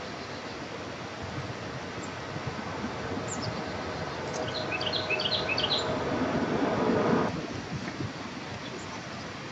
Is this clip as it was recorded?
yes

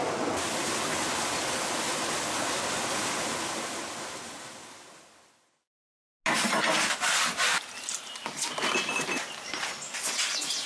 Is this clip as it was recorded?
yes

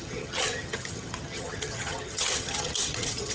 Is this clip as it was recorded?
no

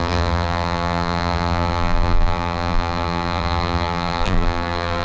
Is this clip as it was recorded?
no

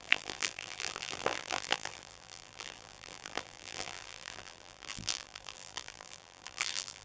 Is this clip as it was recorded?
no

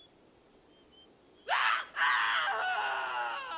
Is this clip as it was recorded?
yes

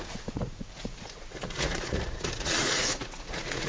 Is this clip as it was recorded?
no